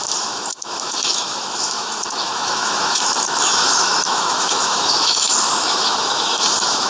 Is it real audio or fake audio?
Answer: fake